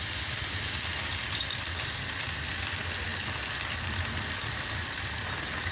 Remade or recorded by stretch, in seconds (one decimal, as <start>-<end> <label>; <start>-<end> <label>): 0.0-0.9 recorded; 0.9-1.8 remade; 1.8-5.7 recorded

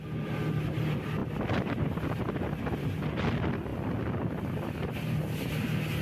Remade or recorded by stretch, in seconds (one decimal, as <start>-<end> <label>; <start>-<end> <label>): 0.0-6.0 recorded

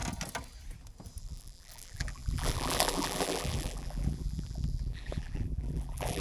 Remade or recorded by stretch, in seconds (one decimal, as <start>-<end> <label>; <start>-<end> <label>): 0.0-1.2 recorded; 1.2-6.2 remade

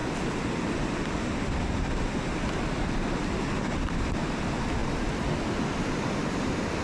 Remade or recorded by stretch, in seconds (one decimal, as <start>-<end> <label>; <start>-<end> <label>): 0.0-6.8 recorded

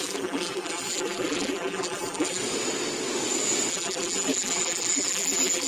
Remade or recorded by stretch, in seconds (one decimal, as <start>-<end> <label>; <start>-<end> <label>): 0.0-2.4 remade; 2.4-3.7 recorded; 3.7-5.7 remade